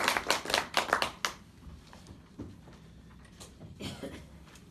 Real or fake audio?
real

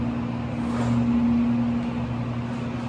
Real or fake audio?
real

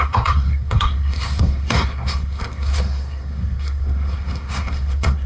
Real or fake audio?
fake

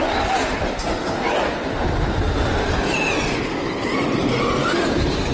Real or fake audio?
real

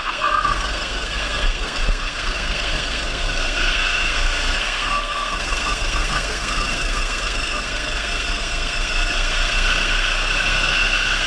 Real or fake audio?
fake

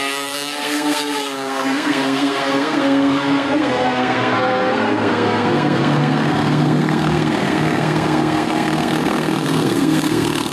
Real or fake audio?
fake